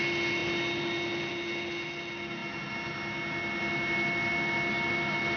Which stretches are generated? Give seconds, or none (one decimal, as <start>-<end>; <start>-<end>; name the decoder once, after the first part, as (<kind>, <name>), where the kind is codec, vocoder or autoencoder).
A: none